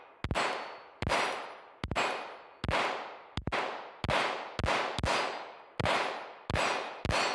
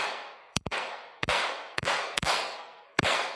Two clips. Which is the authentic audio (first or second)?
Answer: first